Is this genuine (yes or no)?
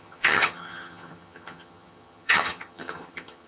no